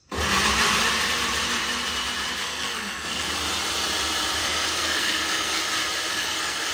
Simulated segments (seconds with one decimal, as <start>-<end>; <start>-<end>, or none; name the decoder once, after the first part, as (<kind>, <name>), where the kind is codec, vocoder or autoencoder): 2.4-3.3 (codec, SNAC); 4.4-5.6; 6.1-6.7